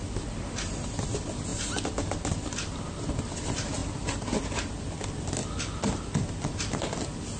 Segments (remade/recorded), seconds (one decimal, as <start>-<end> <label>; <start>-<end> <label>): 0.0-3.8 recorded; 3.8-4.4 remade; 4.4-5.4 recorded; 5.4-6.8 remade; 6.8-7.4 recorded